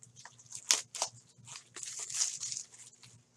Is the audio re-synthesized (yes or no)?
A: no